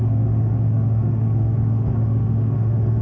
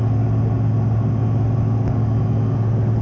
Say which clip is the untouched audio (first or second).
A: second